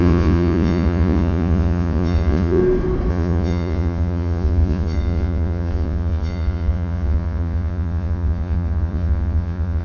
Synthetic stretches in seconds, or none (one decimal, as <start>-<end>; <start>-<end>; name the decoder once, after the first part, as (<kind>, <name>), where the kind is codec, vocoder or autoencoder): 0.0-2.6 (vocoder, Vocos); 3.1-9.8